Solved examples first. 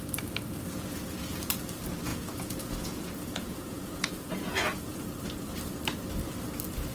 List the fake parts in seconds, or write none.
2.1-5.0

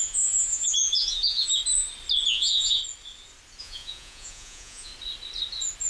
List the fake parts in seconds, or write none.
0.0-1.6; 2.3-2.8; 3.6-4.9

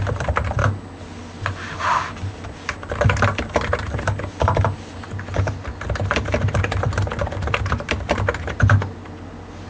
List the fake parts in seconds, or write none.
none

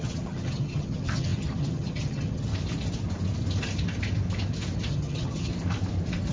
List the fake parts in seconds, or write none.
0.0-2.5; 4.9-5.5

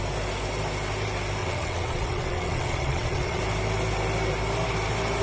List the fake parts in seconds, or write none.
1.4-3.4